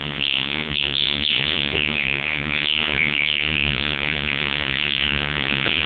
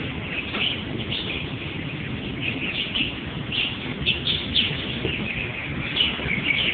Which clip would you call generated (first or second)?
first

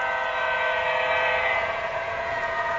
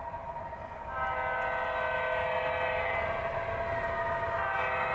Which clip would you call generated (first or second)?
first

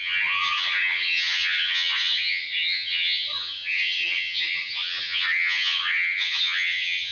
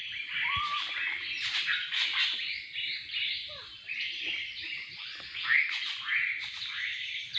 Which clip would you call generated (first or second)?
first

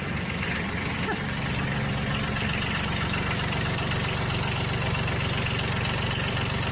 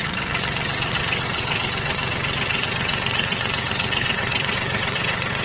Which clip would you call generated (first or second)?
second